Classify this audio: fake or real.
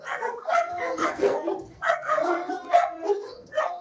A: fake